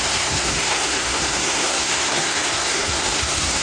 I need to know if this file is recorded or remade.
remade